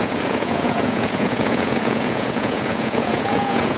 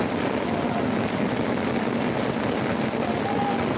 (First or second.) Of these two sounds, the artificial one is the first